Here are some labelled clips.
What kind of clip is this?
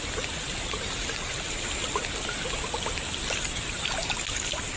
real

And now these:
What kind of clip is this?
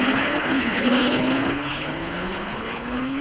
fake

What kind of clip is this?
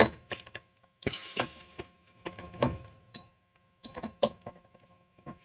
fake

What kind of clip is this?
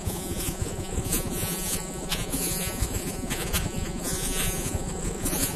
fake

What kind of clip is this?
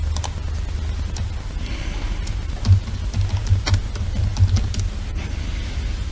real